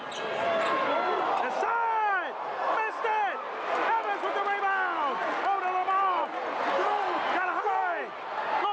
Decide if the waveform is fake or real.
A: real